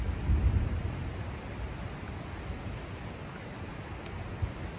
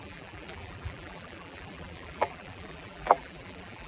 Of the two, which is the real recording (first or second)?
first